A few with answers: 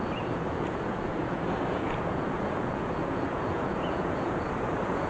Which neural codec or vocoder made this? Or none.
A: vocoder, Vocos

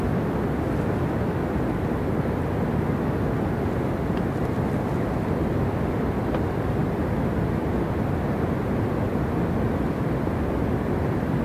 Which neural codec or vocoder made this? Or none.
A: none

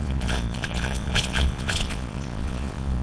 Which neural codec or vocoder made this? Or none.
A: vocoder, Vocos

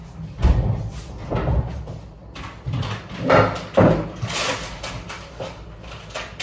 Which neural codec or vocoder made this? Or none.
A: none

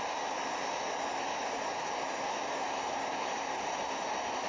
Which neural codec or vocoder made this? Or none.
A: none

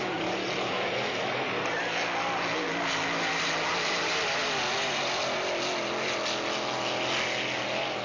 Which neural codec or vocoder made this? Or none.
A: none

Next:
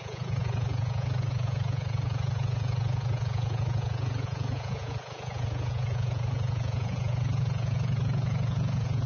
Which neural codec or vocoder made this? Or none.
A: vocoder, Vocos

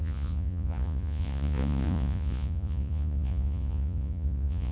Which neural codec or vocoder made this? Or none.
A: vocoder, Vocos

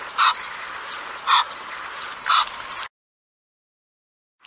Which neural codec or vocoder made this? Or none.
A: none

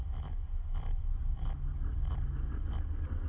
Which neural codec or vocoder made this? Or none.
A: none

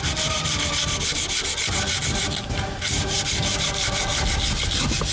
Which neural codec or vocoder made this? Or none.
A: none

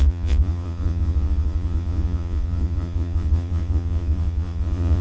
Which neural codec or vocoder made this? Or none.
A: vocoder, Vocos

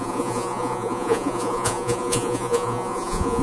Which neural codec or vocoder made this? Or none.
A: vocoder, Vocos